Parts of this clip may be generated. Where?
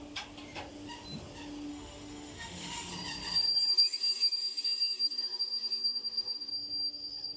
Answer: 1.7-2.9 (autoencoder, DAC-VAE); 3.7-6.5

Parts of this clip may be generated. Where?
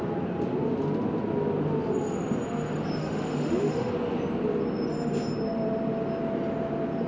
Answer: 3.0-3.9 (autoencoder, DAC-VAE)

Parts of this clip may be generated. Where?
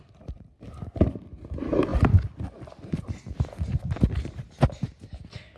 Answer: none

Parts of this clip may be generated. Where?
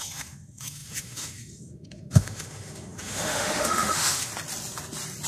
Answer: 0.0-4.3 (autoencoder, DAC-VAE)